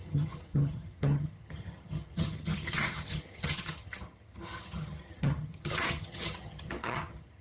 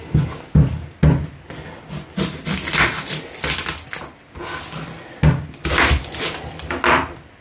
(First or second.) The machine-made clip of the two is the first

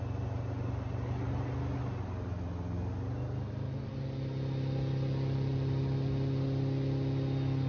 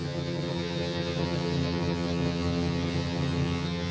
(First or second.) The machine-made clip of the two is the second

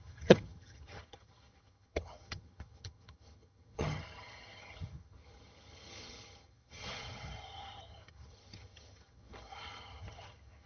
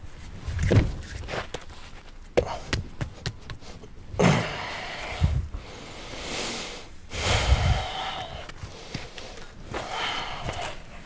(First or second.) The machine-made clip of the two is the first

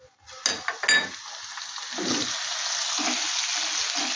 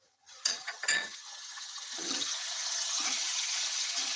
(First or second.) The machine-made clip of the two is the second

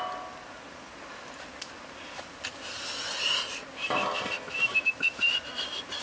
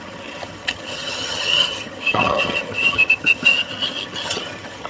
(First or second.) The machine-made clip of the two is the second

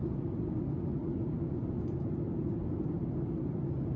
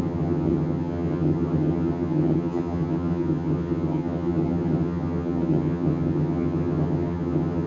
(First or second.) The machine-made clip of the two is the second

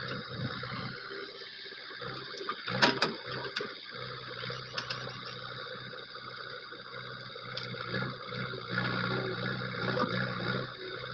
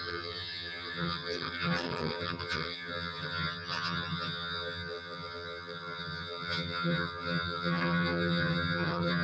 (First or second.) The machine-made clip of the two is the second